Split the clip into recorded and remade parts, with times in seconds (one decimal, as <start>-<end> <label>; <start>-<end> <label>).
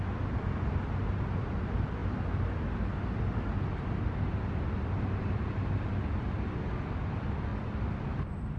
0.0-8.6 recorded